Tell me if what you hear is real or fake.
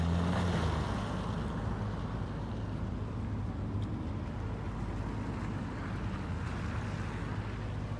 real